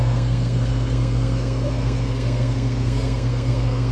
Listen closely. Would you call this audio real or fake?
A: fake